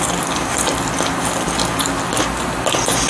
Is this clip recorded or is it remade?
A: recorded